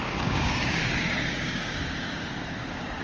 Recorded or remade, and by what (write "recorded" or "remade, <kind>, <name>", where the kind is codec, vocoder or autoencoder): remade, codec, DAC